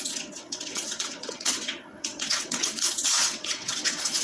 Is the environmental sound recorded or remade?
remade